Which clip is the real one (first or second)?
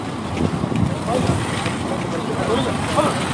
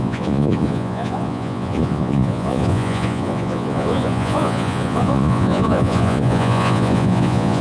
first